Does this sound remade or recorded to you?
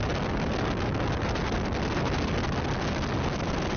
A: recorded